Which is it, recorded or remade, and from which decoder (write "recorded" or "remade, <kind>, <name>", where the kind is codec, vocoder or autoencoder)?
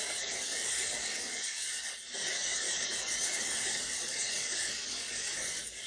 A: remade, codec, DAC